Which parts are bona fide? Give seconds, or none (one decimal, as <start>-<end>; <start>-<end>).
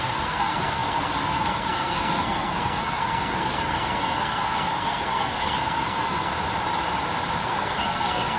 6.3-7.4